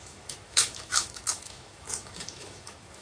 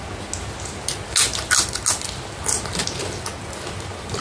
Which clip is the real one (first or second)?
second